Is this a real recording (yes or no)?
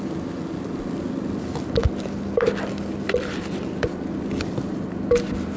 yes